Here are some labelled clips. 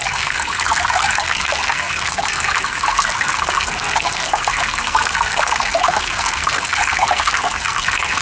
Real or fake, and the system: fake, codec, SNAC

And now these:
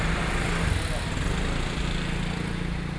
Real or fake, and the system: real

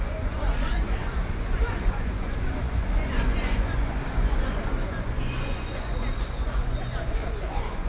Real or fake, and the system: fake, vocoder, Vocos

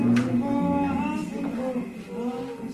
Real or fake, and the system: real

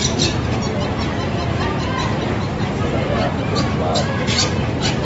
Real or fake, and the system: fake, vocoder, BigVGAN v2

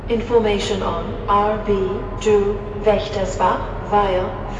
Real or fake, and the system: real